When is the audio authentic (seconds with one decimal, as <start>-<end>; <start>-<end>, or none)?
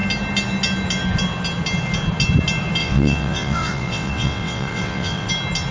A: 0.0-2.8; 5.3-5.7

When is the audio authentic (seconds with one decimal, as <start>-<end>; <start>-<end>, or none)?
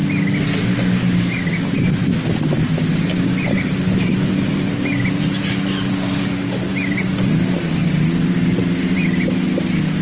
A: 0.0-10.0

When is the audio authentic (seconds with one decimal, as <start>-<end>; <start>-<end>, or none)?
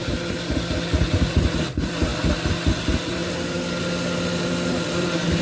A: 0.0-5.4